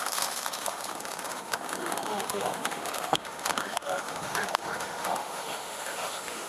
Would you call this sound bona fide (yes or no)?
no